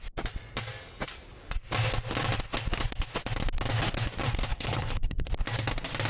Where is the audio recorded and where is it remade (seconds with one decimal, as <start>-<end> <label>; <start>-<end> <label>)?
0.0-4.5 recorded; 4.5-5.3 remade; 5.3-6.1 recorded

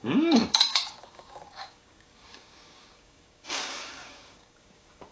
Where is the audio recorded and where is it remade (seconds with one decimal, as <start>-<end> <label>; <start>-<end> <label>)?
0.0-5.1 remade